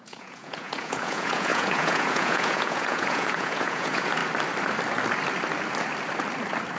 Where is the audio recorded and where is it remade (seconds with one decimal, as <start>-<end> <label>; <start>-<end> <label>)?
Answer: 0.0-4.2 remade; 4.2-6.8 recorded